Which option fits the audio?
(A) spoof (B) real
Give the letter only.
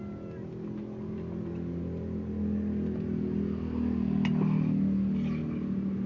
B